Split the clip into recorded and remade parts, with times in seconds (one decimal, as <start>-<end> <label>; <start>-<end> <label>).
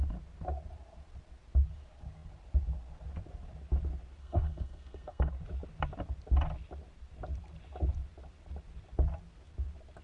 0.0-4.2 recorded; 4.2-5.3 remade; 5.3-10.0 recorded